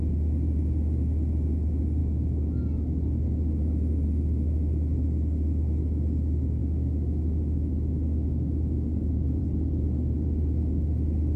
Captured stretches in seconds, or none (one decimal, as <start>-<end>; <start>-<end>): 0.0-2.0; 2.6-6.6; 9.4-11.4